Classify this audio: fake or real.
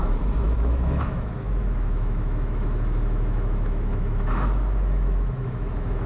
fake